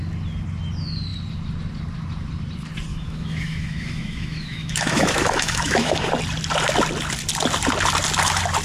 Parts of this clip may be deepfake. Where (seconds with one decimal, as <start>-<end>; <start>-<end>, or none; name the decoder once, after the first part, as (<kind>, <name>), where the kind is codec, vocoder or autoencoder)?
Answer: 2.9-6.1 (autoencoder, DAC-VAE)